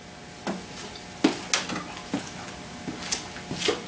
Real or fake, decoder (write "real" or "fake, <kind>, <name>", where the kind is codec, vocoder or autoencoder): real